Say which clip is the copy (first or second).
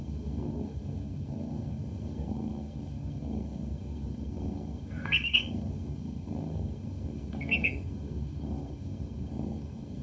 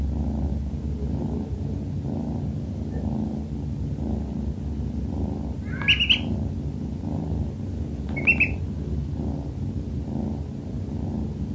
first